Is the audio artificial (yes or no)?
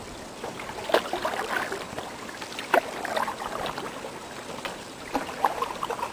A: no